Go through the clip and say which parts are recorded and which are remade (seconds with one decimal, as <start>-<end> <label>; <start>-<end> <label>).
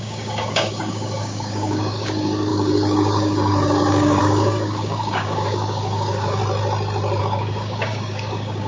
0.0-6.4 remade; 6.4-7.2 recorded; 7.2-8.7 remade